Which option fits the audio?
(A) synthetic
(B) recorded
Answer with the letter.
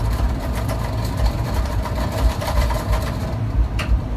A